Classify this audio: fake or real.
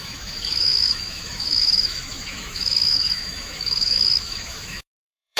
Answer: fake